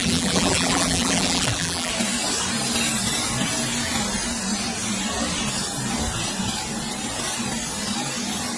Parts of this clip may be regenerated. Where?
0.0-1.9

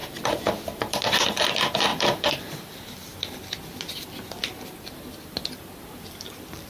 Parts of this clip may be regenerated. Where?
0.0-1.5; 1.9-2.5

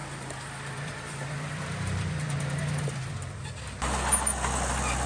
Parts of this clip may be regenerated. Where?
0.0-3.1

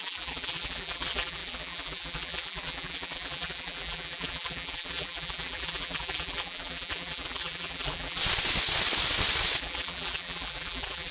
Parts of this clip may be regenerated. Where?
0.0-8.2; 9.6-11.1

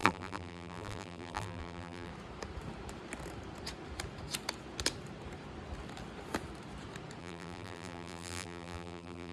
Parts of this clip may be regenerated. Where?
0.0-2.1; 7.2-9.3